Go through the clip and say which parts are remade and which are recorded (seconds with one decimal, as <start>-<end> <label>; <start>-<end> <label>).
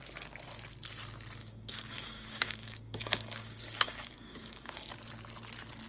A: 0.0-1.4 recorded; 1.4-4.9 remade; 4.9-5.9 recorded